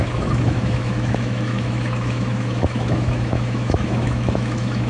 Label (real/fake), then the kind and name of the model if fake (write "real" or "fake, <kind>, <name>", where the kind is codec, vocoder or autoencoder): fake, autoencoder, DAC-VAE